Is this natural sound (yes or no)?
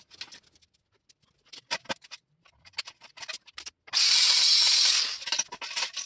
yes